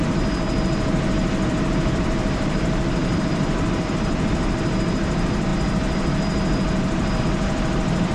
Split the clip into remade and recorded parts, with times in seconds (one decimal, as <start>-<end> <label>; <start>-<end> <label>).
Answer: 0.0-8.1 remade